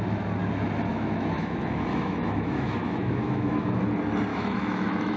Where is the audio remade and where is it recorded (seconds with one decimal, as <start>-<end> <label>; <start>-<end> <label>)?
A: 0.0-0.9 recorded; 0.9-3.8 remade; 3.8-4.3 recorded; 4.3-5.2 remade